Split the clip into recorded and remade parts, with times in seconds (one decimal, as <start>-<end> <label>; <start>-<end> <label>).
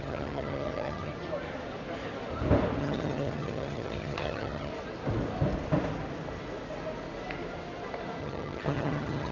0.0-1.1 remade; 1.1-2.8 recorded; 2.8-4.7 remade; 4.7-8.2 recorded; 8.2-9.3 remade